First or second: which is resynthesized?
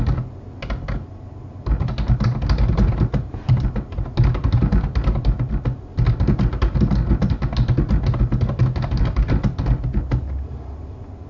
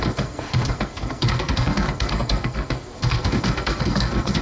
second